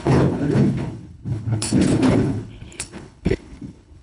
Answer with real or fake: fake